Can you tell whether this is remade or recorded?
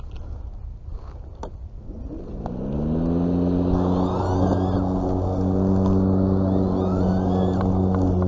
recorded